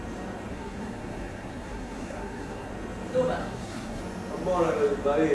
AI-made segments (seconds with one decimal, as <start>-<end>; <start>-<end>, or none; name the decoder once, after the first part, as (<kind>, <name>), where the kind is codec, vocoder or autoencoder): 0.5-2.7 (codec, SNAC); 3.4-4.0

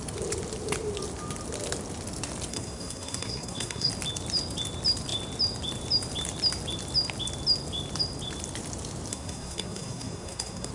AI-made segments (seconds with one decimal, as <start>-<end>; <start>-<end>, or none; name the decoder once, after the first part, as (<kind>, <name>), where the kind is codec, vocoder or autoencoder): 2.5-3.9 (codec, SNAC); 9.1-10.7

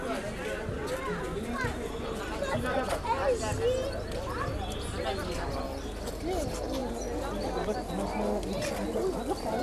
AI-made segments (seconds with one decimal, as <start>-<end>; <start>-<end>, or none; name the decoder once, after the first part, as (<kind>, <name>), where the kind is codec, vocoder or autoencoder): none

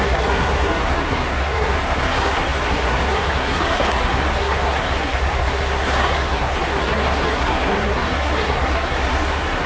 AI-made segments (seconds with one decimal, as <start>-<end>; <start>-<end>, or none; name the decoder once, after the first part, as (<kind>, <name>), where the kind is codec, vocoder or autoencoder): 0.0-9.7 (codec, SNAC)

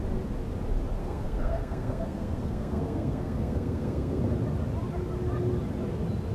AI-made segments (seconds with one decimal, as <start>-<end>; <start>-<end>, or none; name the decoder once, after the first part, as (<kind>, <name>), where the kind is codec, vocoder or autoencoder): 1.0-4.2 (codec, SNAC)

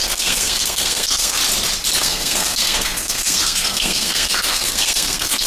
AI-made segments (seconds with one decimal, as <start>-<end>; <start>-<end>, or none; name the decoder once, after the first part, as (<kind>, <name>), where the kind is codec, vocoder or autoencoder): 0.0-1.4 (codec, SNAC); 2.0-5.5

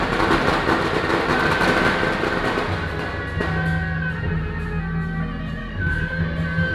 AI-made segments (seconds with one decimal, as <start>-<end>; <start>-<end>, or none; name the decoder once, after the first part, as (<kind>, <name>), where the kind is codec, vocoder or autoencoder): 5.6-6.2 (codec, SNAC)